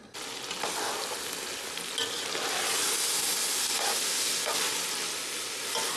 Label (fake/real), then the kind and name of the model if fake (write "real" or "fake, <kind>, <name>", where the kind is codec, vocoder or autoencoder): real